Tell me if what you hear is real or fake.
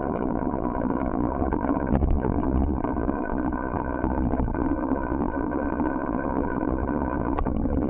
fake